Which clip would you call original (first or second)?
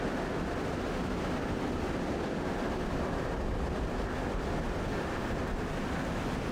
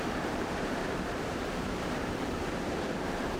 first